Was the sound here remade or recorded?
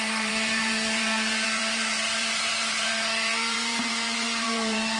remade